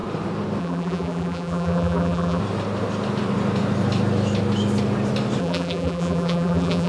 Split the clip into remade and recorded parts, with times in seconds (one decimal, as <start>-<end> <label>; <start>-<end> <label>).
0.0-0.6 recorded; 0.6-2.4 remade; 2.4-5.4 recorded; 5.4-6.9 remade